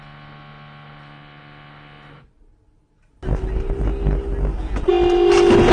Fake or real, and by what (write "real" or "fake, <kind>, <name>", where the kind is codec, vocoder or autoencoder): real